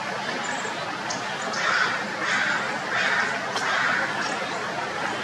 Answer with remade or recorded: recorded